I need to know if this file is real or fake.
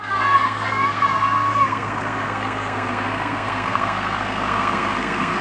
fake